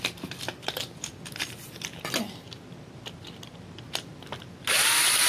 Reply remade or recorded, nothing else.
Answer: recorded